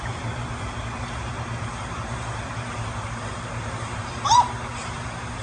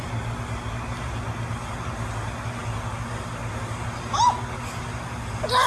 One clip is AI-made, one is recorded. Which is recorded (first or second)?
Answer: second